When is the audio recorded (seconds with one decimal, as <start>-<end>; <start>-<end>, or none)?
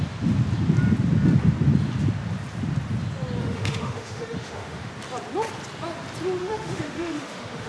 0.0-3.4; 4.9-6.4